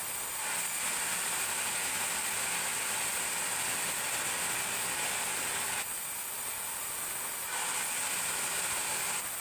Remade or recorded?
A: recorded